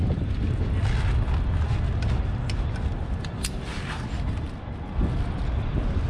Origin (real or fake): real